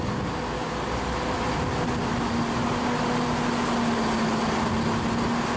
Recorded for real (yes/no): yes